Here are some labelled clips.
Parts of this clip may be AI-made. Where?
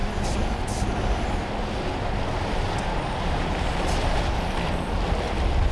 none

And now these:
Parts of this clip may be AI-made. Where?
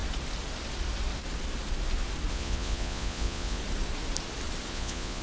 2.3-3.6 (vocoder, Vocos); 4.7-5.2